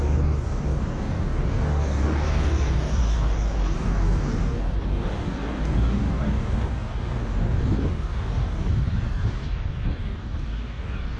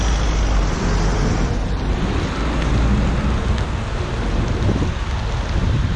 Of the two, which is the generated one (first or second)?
first